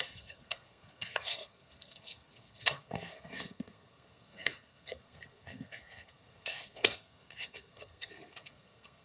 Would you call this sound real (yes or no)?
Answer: no